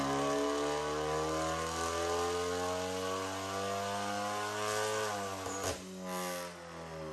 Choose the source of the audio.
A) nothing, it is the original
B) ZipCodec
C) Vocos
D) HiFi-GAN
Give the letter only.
A